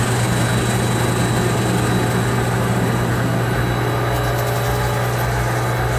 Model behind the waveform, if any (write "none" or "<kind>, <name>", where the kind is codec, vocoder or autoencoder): none